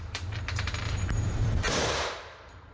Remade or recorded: remade